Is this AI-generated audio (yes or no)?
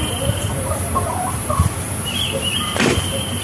yes